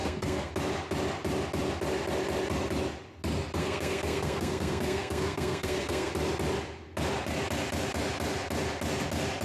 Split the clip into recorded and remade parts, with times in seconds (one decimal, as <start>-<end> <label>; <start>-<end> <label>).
0.0-0.5 remade; 0.5-3.6 recorded; 3.6-6.1 remade; 6.1-9.4 recorded